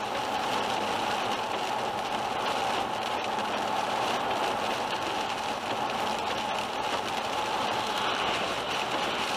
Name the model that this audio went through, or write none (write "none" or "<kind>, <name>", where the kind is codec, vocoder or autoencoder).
none